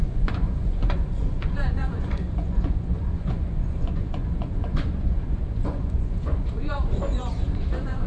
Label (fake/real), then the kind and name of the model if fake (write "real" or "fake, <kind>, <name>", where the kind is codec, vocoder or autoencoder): fake, vocoder, Vocos